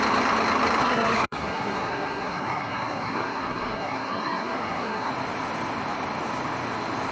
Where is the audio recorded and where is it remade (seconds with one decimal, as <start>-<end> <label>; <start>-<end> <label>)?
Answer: 0.0-0.8 recorded; 0.8-5.1 remade; 5.1-7.1 recorded